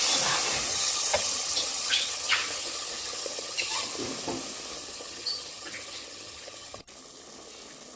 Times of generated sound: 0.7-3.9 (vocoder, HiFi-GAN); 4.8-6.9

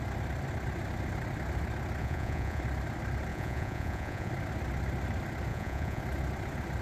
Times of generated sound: 2.0-2.6 (vocoder, Vocos); 3.3-4.3; 5.5-6.0